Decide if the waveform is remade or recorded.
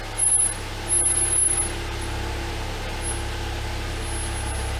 recorded